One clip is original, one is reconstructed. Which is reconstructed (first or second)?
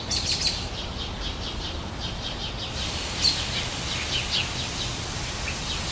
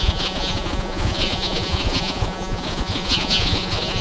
second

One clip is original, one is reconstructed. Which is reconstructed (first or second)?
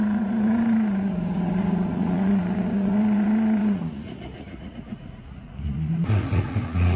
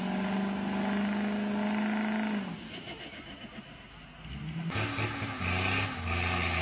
first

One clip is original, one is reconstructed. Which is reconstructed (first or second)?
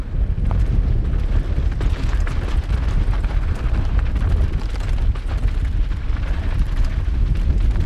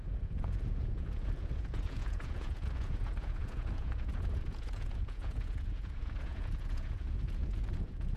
second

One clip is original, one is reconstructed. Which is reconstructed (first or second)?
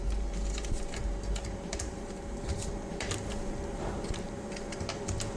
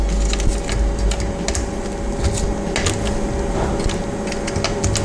first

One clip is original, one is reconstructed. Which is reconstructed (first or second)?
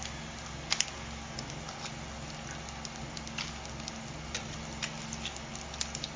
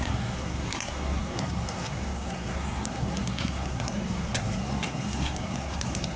second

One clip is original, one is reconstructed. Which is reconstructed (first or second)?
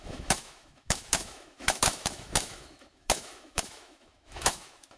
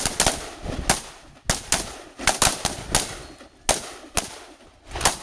first